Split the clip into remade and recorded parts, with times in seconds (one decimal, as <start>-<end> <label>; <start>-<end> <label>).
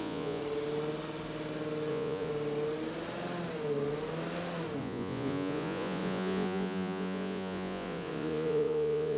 0.0-0.4 remade; 0.4-1.9 recorded; 1.9-2.3 remade; 2.3-4.8 recorded; 4.8-9.2 remade